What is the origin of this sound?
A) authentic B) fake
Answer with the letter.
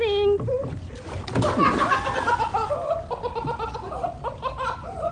A